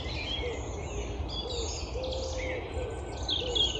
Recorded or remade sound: recorded